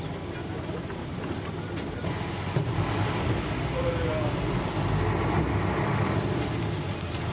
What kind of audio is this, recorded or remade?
recorded